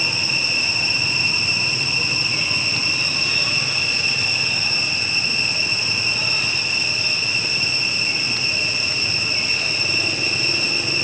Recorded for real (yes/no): yes